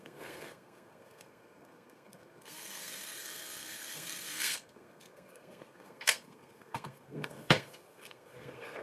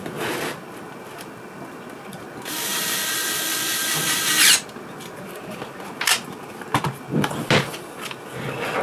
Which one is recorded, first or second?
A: second